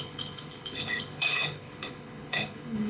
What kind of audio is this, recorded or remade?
remade